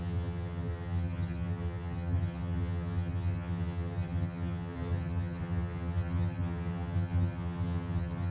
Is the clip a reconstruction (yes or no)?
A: yes